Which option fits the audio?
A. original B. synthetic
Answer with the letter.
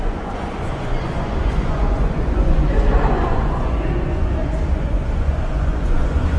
B